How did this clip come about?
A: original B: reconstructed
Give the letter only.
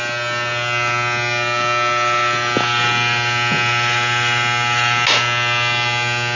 A